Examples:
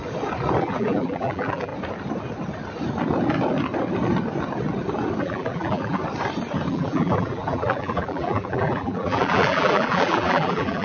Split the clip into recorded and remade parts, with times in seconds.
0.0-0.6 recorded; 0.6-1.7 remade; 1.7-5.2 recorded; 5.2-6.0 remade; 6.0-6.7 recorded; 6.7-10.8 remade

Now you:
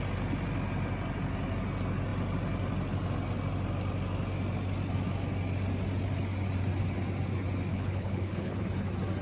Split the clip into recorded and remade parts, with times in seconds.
0.0-7.7 recorded; 7.7-8.6 remade; 8.6-9.2 recorded